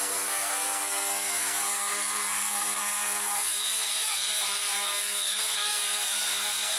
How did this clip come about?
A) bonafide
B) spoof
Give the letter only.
B